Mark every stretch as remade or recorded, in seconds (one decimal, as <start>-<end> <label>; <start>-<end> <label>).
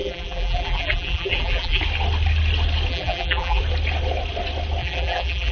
0.0-1.8 remade; 1.8-2.9 recorded; 2.9-3.6 remade; 3.6-4.8 recorded; 4.8-5.5 remade